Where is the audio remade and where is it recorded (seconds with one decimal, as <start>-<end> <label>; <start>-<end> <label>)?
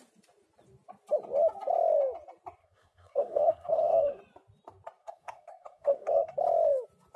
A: 0.0-2.6 recorded; 2.6-4.2 remade; 4.2-5.0 recorded; 5.0-6.3 remade; 6.3-7.2 recorded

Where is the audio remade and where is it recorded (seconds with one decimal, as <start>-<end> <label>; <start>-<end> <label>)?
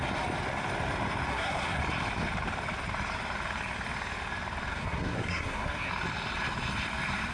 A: 0.0-1.3 recorded; 1.3-1.8 remade; 1.8-4.7 recorded; 4.7-5.9 remade; 5.9-7.3 recorded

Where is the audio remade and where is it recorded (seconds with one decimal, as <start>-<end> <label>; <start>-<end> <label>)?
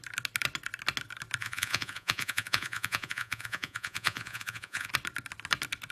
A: 0.0-1.4 recorded; 1.4-4.9 remade; 4.9-5.9 recorded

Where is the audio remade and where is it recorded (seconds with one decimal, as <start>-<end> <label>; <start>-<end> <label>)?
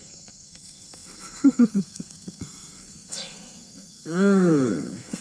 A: 0.0-5.2 remade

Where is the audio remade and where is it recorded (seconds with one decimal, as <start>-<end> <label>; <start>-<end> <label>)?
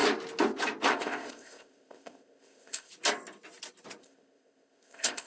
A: 0.0-0.9 recorded; 0.9-2.9 remade; 2.9-4.0 recorded; 4.0-5.3 remade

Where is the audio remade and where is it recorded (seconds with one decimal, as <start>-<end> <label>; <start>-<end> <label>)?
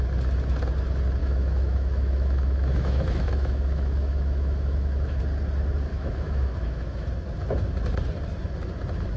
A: 0.0-1.2 recorded; 1.2-5.2 remade; 5.2-5.9 recorded; 5.9-7.1 remade; 7.1-9.2 recorded